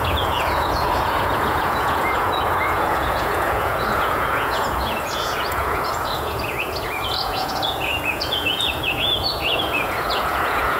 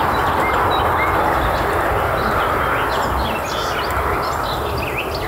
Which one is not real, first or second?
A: first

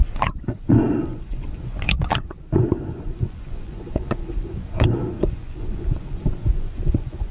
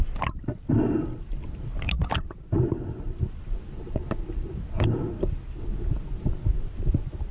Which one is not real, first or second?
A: first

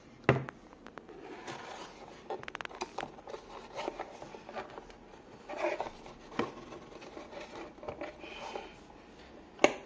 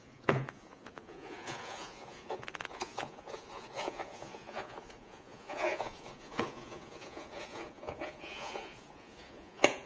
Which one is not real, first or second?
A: second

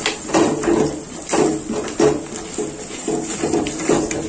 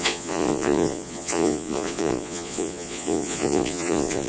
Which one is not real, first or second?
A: second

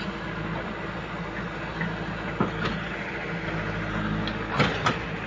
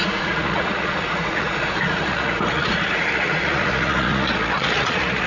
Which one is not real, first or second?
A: second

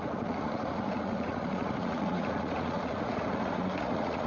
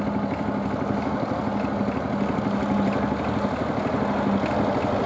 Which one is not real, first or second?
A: first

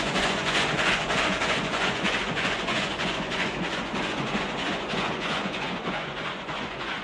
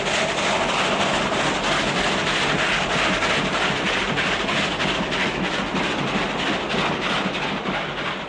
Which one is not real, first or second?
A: first